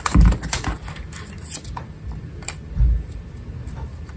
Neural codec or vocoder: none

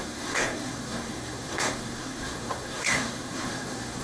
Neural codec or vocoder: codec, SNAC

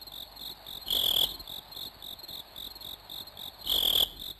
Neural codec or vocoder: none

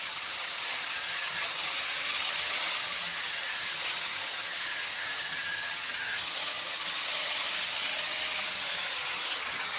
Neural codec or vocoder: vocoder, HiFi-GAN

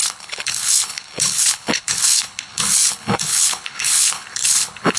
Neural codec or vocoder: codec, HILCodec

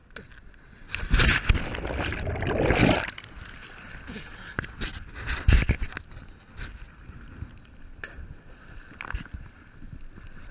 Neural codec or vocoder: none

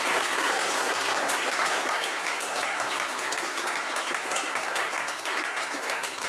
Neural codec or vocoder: codec, SNAC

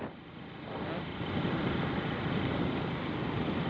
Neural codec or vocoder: none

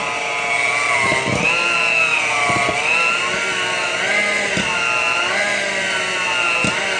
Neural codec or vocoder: none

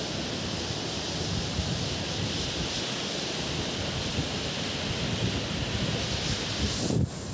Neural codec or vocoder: none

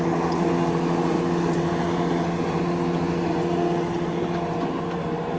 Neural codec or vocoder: none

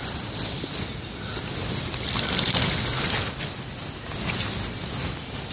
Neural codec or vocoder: none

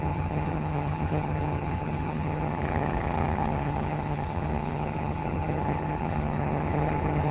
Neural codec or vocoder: vocoder, HiFi-GAN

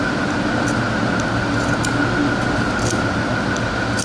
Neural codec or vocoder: none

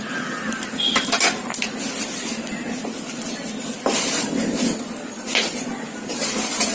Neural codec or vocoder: none